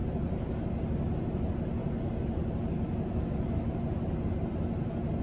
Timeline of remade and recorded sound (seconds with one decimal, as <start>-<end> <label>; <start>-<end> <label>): 0.0-5.2 recorded